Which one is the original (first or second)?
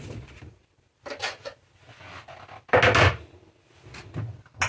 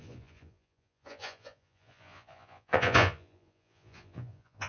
first